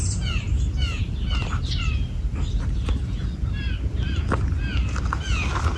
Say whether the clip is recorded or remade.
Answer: recorded